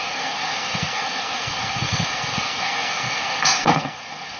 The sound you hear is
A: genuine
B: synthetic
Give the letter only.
B